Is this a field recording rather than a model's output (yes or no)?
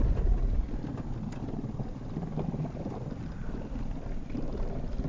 yes